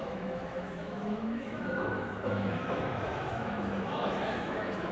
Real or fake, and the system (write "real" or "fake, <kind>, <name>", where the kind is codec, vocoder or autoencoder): fake, autoencoder, DAC-VAE